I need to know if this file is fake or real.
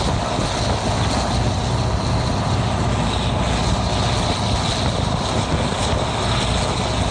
real